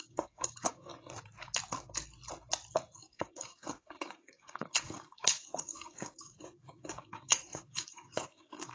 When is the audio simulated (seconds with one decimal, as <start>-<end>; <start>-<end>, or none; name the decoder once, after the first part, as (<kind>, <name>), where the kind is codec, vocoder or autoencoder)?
0.0-0.9 (codec, DAC); 3.0-8.7

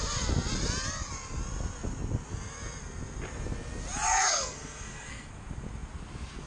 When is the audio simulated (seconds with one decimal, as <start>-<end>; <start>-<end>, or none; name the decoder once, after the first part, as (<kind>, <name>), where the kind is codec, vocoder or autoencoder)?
4.1-5.3 (codec, SNAC)

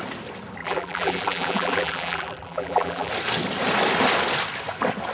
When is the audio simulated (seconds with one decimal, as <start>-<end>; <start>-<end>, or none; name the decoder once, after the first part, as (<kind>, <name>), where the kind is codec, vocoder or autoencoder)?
0.6-3.1 (vocoder, BigVGAN v2)

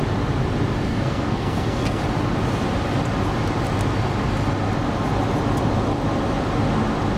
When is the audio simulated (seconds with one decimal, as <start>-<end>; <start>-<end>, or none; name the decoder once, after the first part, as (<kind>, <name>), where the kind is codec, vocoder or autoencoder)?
0.9-2.0 (codec, SNAC)

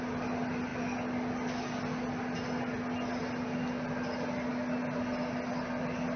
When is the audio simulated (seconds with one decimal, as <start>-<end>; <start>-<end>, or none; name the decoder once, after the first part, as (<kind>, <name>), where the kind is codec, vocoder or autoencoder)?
none

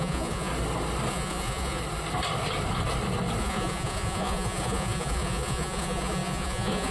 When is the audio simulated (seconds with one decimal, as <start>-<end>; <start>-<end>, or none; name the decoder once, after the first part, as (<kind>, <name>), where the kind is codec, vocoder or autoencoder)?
0.0-0.5 (vocoder, Vocos); 1.1-1.8; 3.4-6.9

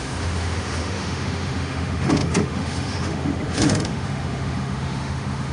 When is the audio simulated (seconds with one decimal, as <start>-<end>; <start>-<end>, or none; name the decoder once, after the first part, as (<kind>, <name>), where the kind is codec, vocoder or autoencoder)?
0.0-5.5 (autoencoder, DAC-VAE)

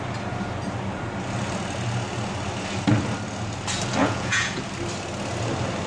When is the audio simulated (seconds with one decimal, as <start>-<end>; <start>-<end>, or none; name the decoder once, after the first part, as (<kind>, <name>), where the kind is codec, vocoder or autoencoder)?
4.0-4.6 (vocoder, Vocos)